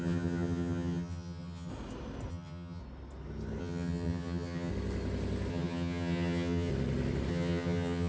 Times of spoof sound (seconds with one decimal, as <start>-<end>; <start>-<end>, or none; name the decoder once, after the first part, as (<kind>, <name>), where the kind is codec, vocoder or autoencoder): 0.0-1.7 (vocoder, HiFi-GAN); 2.3-2.8; 3.6-4.7; 5.5-6.7; 7.3-8.1